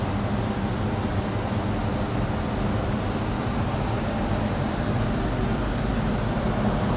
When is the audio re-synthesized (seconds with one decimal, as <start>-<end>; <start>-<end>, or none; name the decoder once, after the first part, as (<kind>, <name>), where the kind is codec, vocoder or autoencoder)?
none